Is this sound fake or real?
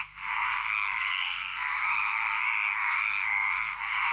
fake